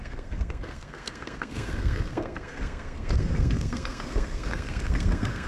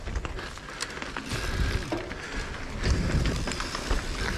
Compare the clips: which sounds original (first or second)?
second